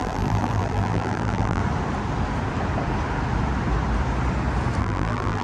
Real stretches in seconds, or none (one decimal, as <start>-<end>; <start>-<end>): 1.6-4.8